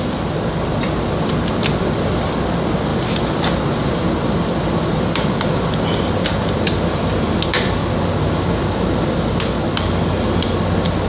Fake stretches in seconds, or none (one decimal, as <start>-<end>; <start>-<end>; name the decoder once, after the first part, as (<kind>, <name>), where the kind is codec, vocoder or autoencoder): 2.9-7.9 (vocoder, BigVGAN v2)